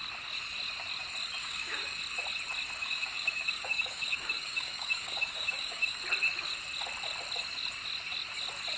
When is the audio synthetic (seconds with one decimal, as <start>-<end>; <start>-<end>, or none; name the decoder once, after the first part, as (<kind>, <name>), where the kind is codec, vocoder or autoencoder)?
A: 1.4-2.0 (codec, DAC); 2.8-6.0